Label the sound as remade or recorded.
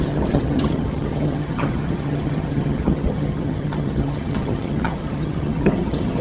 remade